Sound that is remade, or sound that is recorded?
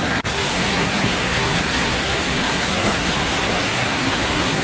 remade